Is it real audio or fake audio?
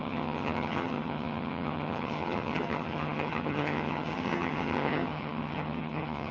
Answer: fake